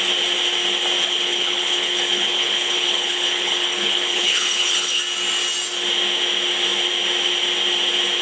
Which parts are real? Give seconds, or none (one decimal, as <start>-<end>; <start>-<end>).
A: 0.0-1.0; 5.0-8.2